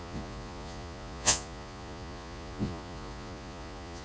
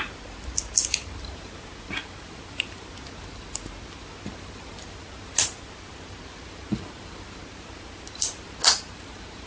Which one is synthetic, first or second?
first